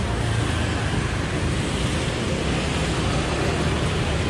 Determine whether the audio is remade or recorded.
recorded